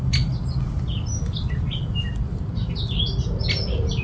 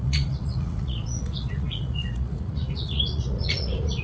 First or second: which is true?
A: first